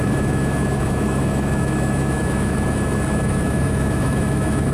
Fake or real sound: fake